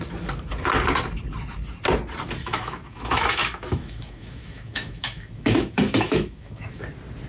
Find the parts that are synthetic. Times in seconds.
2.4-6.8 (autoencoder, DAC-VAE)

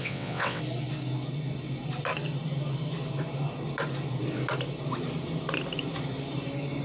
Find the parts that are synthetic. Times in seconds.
0.0-0.6 (vocoder, WaveNeXt)